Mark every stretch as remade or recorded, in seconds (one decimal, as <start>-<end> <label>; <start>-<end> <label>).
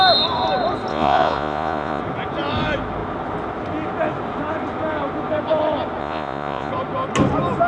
0.0-0.9 recorded; 0.9-2.0 remade; 2.0-6.0 recorded; 6.0-6.7 remade; 6.7-7.7 recorded